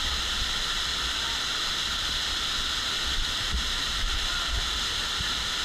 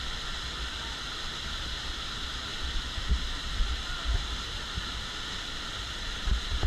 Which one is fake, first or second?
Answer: first